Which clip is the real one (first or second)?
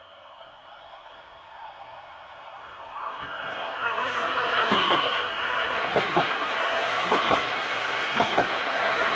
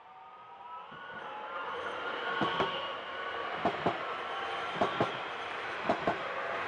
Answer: second